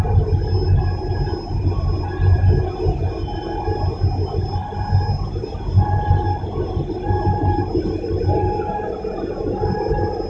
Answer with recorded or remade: recorded